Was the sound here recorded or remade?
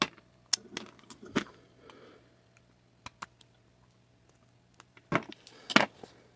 recorded